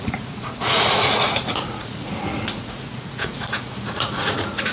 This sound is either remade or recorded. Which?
remade